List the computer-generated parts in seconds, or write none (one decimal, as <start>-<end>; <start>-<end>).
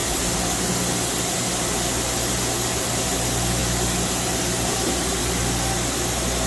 none